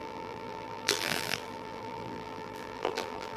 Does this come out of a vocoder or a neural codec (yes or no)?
yes